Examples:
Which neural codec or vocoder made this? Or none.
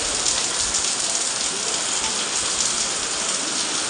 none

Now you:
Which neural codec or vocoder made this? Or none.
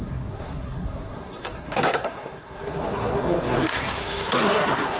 codec, SNAC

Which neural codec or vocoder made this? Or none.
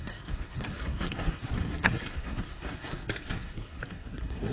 codec, SNAC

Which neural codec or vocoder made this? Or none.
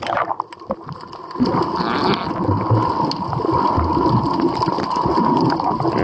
none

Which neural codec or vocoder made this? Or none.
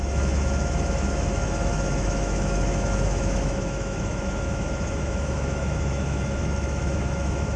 autoencoder, DAC-VAE